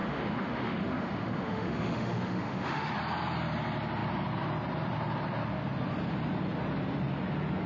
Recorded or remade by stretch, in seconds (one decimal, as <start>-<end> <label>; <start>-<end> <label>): 0.0-2.9 remade; 2.9-7.7 recorded